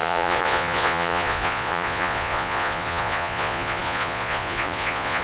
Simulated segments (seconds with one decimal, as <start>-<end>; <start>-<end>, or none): 0.0-5.2